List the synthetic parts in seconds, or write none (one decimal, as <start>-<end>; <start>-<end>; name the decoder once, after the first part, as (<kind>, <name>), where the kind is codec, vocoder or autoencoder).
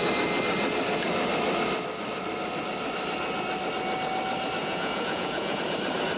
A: 4.6-5.6 (vocoder, Vocos)